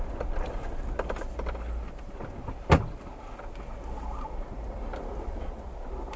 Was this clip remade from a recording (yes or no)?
no